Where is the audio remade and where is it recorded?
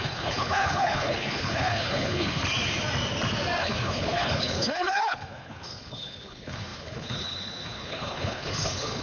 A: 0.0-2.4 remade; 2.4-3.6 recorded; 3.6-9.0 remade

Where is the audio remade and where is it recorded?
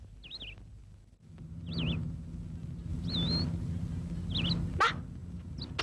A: 0.0-5.8 recorded